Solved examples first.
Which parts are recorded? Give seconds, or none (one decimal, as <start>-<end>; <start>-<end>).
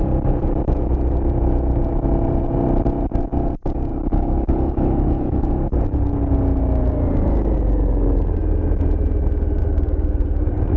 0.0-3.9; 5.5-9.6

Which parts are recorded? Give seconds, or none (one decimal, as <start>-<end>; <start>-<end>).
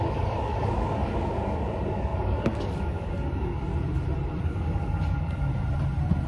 3.7-4.4; 5.5-6.3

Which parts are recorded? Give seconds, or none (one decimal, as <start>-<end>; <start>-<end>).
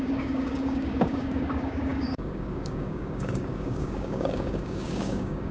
none